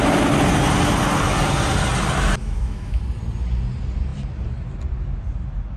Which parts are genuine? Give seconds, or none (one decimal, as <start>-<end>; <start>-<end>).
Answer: 0.0-2.4; 3.0-5.8

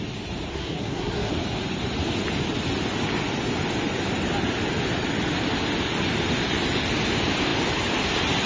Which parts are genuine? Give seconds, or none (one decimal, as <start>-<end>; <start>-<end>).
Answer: 0.0-0.5; 1.3-8.5

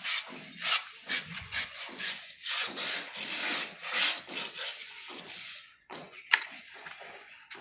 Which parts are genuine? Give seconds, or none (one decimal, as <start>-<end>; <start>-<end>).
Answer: 0.0-1.0; 2.8-4.8